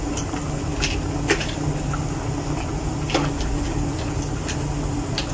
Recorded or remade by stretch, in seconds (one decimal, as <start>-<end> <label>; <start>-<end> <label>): 0.0-5.3 recorded